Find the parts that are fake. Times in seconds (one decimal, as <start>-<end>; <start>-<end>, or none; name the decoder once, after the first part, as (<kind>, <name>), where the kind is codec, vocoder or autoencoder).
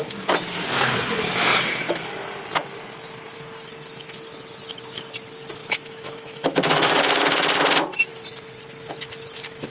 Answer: 5.6-7.0 (autoencoder, DAC-VAE)